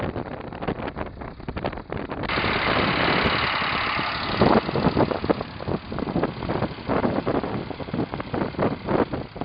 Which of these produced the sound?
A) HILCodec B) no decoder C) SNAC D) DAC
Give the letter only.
B